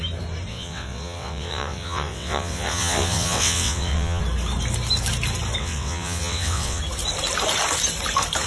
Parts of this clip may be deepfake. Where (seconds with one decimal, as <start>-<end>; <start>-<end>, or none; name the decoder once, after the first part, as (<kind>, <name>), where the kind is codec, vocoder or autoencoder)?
0.5-4.2 (vocoder, WaveNeXt); 5.6-6.8